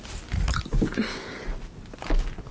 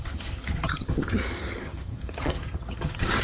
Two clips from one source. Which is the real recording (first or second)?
first